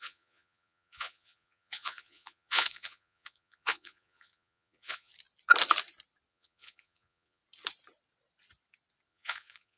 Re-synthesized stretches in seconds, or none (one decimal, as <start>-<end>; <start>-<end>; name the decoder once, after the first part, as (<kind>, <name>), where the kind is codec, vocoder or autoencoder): 0.0-5.1 (vocoder, Vocos); 6.3-7.4; 9.1-9.8